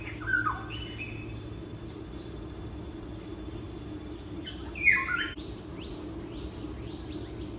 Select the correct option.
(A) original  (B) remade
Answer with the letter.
A